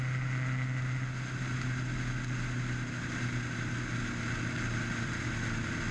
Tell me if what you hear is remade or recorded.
recorded